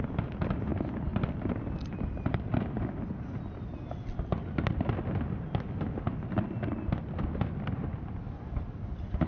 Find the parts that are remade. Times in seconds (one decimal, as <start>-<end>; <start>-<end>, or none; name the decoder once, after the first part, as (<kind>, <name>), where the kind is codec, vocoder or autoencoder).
0.7-3.4 (vocoder, BigVGAN v2)